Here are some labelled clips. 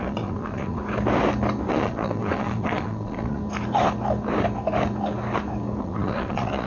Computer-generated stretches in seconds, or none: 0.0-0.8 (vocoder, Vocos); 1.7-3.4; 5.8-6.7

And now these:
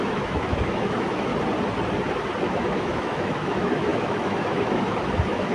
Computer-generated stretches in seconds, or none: 0.0-1.3 (autoencoder, DAC-VAE); 2.4-5.5

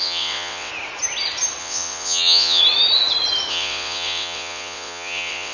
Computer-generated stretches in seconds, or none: 0.0-0.7 (vocoder, WaveNeXt); 1.6-2.6; 3.5-5.5

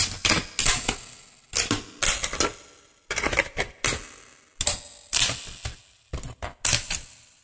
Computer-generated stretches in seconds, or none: none

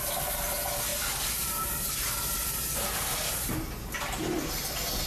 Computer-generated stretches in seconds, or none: none

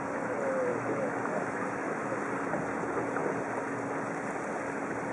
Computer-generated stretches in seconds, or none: 0.7-2.2 (autoencoder, DAC-VAE)